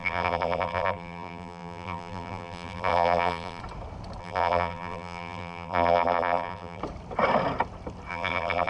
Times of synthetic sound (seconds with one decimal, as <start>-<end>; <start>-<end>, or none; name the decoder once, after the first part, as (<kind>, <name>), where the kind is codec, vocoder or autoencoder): 0.0-3.6 (vocoder, BigVGAN v2); 4.2-6.8; 8.1-8.7